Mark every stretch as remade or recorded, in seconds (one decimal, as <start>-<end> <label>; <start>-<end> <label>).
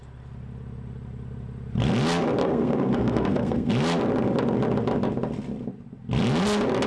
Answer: 0.0-2.4 recorded; 2.4-3.7 remade; 3.7-6.9 recorded